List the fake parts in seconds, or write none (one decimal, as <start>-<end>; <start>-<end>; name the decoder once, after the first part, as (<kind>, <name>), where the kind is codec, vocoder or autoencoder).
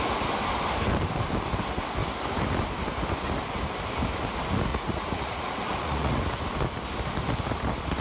4.7-6.2 (vocoder, Vocos)